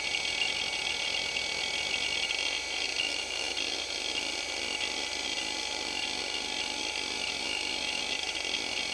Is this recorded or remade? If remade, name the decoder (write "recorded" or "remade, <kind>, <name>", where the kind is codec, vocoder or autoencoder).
recorded